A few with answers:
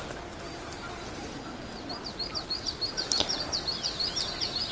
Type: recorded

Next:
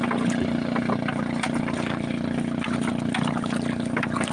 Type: recorded